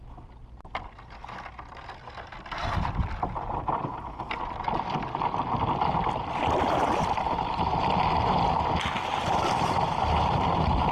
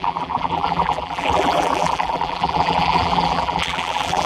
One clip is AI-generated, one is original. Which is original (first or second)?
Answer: first